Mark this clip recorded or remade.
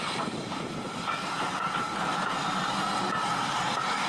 recorded